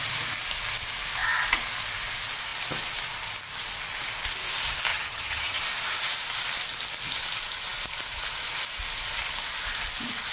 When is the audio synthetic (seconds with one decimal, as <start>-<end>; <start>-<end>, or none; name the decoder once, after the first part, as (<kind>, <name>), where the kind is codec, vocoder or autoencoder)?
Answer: 4.9-5.6 (vocoder, HiFi-GAN)